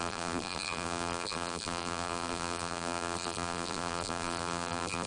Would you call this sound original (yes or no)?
no